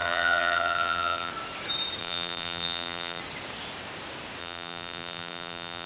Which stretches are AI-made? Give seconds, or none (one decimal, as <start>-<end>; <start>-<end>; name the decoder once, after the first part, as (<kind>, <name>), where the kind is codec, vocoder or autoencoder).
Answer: 0.0-1.3 (vocoder, BigVGAN v2); 2.0-3.2; 4.4-5.9